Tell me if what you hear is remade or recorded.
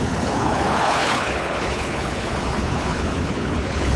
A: remade